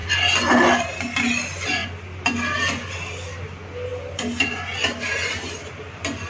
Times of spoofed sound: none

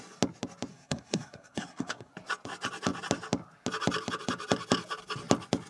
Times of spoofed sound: 0.7-2.1 (codec, SNAC)

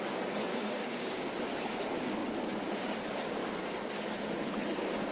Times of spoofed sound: 0.5-1.3 (codec, DAC)

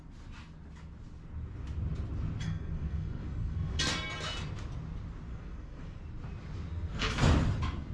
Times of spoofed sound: 2.4-3.8 (codec, SNAC); 5.3-6.0; 6.7-7.2

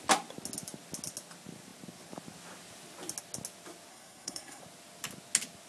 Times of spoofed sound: 3.9-4.6 (codec, SNAC)

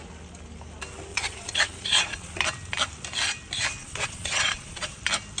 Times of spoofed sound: 1.1-2.4 (vocoder, Vocos); 3.8-5.0